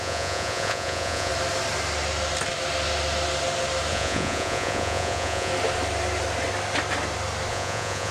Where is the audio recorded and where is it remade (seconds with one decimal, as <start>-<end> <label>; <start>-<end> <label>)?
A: 0.0-1.3 remade; 1.3-3.9 recorded; 3.9-5.5 remade; 5.5-7.5 recorded; 7.5-8.1 remade